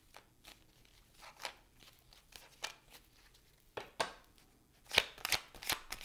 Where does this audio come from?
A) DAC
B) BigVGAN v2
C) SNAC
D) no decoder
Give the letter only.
D